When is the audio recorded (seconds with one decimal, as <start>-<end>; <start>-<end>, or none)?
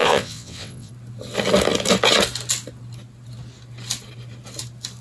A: 0.9-5.0